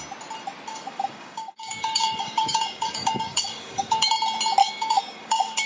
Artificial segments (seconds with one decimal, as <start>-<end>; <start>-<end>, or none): 0.7-4.1; 4.6-5.7